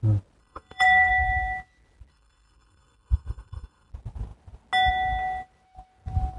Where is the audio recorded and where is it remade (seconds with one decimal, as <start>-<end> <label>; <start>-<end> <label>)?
0.0-0.4 recorded; 0.4-1.1 remade; 1.1-2.1 recorded; 2.1-3.9 remade; 3.9-6.4 recorded